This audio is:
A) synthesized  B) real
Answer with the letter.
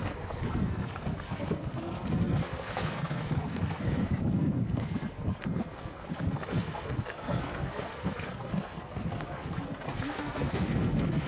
A